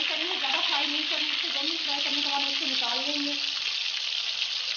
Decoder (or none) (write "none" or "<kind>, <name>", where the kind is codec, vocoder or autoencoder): none